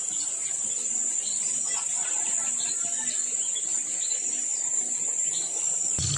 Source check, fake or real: real